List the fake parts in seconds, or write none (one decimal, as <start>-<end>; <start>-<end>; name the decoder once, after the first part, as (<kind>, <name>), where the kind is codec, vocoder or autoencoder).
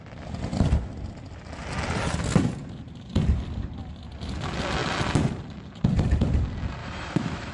6.8-7.5 (autoencoder, DAC-VAE)